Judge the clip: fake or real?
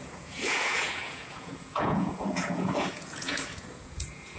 fake